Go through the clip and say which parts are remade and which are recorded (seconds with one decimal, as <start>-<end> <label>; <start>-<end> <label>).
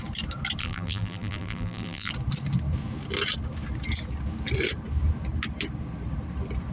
0.0-0.6 recorded; 0.6-2.1 remade; 2.1-6.7 recorded